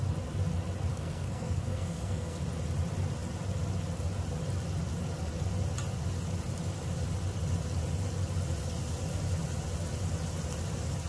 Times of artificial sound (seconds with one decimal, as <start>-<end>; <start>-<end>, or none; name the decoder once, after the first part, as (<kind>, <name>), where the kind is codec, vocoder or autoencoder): 0.9-2.4 (codec, SNAC)